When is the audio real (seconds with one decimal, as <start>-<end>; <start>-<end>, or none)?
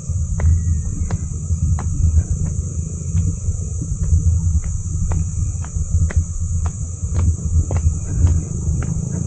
0.0-9.3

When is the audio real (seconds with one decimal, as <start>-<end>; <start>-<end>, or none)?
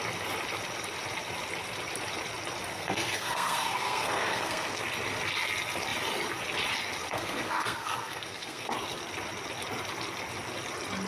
0.0-2.7; 4.8-7.1; 8.7-11.1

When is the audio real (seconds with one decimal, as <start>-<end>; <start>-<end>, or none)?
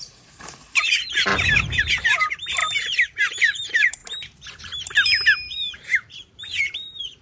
1.3-1.8; 4.0-4.6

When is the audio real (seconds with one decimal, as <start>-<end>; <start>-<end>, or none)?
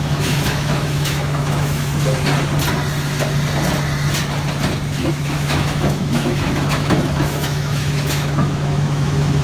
1.9-5.1